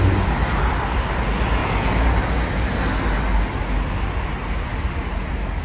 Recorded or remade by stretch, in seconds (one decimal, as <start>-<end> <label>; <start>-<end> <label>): 0.0-5.6 recorded